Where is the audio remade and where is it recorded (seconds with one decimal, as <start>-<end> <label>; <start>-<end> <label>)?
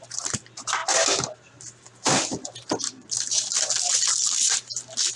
0.0-5.2 recorded